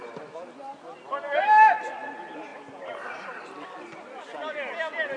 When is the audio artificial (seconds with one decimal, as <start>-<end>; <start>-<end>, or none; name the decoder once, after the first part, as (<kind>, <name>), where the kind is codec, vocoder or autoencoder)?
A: none

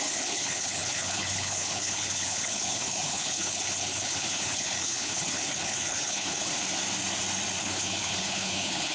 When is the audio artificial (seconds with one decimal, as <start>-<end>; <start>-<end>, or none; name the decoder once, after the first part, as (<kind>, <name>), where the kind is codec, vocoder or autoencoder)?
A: 0.0-6.5 (codec, HILCodec); 7.6-8.9

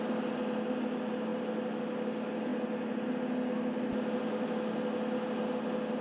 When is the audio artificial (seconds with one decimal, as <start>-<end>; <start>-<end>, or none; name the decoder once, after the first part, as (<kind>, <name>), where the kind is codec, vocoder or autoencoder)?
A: none